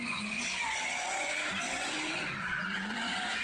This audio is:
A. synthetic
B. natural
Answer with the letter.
A